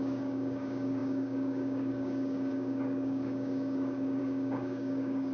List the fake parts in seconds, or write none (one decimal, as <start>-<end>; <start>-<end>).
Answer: 0.0-5.3